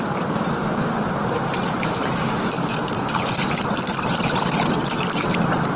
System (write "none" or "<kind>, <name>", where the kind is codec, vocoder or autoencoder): vocoder, BigVGAN v2